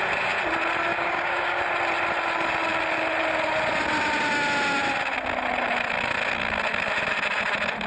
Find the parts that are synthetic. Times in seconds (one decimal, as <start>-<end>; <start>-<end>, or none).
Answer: 0.9-1.6

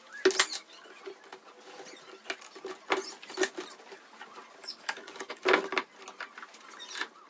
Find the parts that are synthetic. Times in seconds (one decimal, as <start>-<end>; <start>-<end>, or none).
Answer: 4.6-5.4

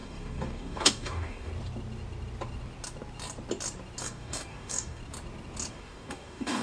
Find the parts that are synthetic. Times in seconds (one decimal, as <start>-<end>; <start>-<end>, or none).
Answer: 0.0-1.5; 4.0-5.0; 5.7-6.6

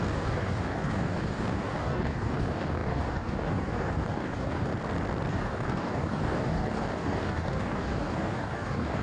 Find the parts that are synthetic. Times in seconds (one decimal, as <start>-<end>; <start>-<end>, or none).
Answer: 0.0-4.7; 5.3-9.0

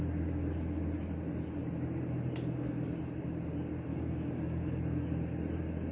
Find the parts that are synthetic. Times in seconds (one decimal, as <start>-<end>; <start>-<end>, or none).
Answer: 3.9-4.8

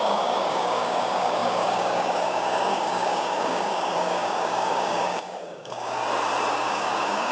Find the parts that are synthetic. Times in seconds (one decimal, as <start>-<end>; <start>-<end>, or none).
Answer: 0.0-6.0; 6.5-7.3

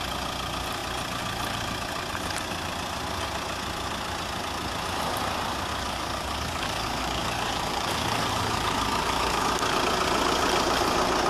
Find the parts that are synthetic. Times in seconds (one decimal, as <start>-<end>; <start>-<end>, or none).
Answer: 5.7-9.4

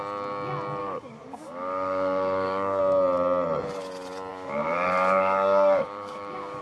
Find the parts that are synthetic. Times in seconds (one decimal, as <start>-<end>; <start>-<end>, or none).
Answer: 0.8-2.8; 4.3-6.6